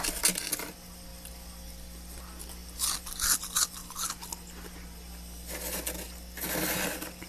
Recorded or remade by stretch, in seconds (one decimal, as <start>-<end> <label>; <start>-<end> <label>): 0.0-7.3 recorded